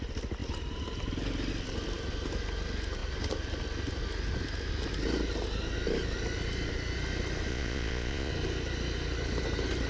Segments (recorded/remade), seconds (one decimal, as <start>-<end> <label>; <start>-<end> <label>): 0.0-7.5 recorded; 7.5-8.3 remade; 8.3-9.9 recorded